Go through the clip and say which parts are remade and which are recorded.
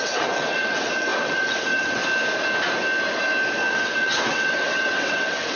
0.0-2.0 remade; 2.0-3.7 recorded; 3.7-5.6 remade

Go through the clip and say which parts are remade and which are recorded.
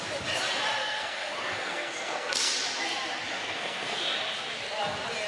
0.0-0.8 recorded; 0.8-2.5 remade; 2.5-3.4 recorded; 3.4-4.0 remade; 4.0-5.3 recorded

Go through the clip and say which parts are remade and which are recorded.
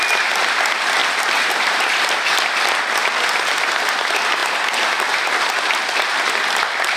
0.0-1.0 recorded; 1.0-2.3 remade; 2.3-7.0 recorded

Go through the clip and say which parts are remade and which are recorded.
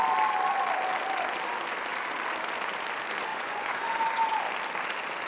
0.0-3.3 recorded; 3.3-4.4 remade; 4.4-5.3 recorded